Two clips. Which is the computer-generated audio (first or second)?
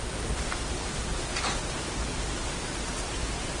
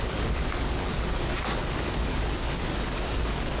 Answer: second